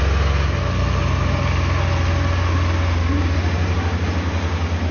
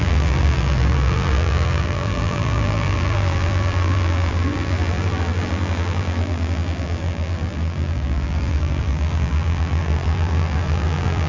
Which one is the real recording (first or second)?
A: first